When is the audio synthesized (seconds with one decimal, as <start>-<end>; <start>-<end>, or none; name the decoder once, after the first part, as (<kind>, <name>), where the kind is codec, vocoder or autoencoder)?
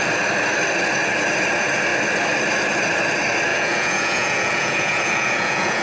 3.5-5.8 (vocoder, Vocos)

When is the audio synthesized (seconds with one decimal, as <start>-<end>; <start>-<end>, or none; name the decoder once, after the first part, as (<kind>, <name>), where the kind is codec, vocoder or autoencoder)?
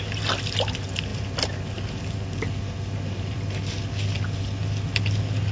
none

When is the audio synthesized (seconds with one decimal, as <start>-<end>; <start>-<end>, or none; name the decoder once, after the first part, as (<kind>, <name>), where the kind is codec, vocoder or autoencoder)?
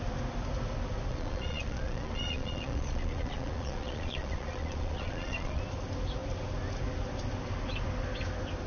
1.1-5.6 (vocoder, Vocos)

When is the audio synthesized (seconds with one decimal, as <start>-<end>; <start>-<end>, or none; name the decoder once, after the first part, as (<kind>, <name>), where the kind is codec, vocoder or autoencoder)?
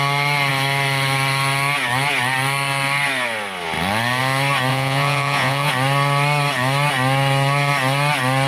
4.7-5.7 (vocoder, Vocos)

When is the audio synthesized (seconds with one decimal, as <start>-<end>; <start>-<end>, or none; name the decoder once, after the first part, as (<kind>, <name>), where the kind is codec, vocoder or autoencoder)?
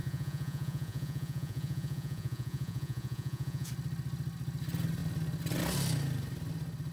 0.0-3.7 (vocoder, Vocos)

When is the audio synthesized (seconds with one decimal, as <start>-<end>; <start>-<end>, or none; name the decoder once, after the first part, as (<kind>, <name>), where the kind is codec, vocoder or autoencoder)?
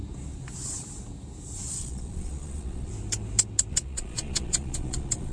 1.7-2.9 (vocoder, Vocos); 3.7-5.3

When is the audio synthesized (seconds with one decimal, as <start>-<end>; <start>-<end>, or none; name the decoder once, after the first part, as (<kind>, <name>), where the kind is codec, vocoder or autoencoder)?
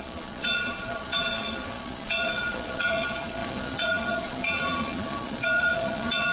0.0-6.3 (vocoder, Vocos)